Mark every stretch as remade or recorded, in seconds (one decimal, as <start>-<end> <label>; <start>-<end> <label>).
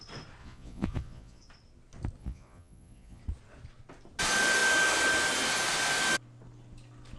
0.0-0.4 recorded; 0.4-1.4 remade; 1.4-2.2 recorded; 2.2-3.2 remade; 3.2-7.2 recorded